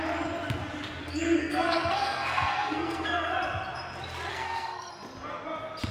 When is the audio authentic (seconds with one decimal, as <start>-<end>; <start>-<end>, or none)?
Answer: 0.0-1.0; 3.4-4.3; 4.9-5.9